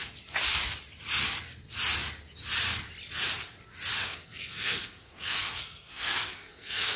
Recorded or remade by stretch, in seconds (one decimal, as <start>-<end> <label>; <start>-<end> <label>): 0.0-4.0 recorded; 4.0-7.0 remade